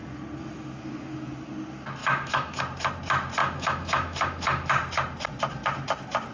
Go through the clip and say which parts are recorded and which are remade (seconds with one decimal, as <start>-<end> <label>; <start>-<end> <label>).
0.0-2.0 recorded; 2.0-2.6 remade; 2.6-3.4 recorded; 3.4-4.7 remade; 4.7-6.3 recorded